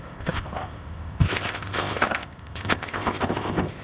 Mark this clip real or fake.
fake